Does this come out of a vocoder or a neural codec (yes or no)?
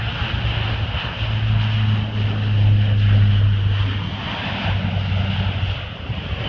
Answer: no